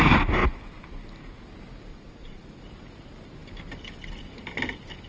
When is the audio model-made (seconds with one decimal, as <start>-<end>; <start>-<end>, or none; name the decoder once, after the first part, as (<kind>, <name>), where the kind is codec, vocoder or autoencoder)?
1.9-2.6 (vocoder, Vocos)